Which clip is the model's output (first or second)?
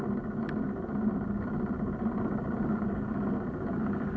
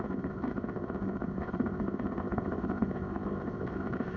second